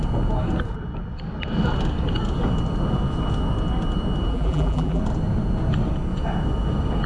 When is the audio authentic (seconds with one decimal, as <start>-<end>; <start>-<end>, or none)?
0.0-4.3; 5.0-7.1